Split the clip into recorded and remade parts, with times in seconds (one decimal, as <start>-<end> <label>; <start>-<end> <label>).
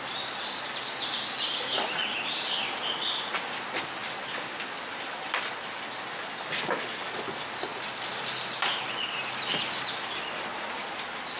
0.0-11.4 recorded